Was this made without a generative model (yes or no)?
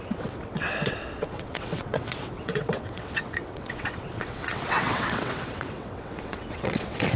no